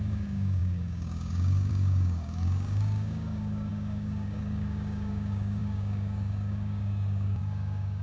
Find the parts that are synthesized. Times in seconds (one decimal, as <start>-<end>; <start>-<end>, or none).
0.0-8.0